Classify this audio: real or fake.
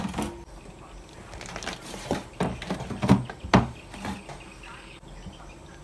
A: real